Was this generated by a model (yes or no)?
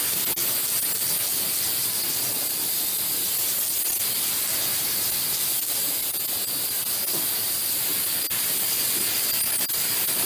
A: no